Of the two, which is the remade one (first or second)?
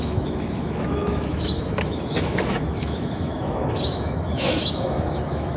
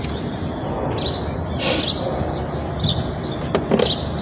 first